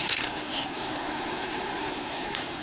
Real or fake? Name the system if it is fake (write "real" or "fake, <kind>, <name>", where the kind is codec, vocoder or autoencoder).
fake, codec, SNAC